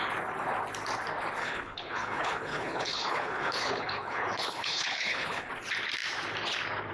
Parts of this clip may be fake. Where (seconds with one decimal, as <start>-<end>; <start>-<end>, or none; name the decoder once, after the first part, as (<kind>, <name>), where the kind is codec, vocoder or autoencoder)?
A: 1.4-5.5 (codec, HILCodec)